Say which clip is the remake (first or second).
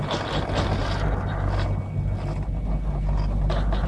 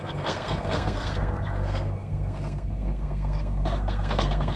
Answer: second